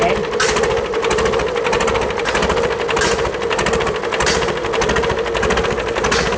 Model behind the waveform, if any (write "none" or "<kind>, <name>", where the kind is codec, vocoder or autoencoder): none